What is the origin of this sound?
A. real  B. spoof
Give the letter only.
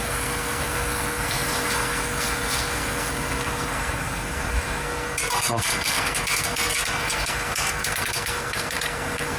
B